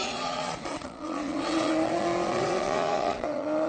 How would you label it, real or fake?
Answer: fake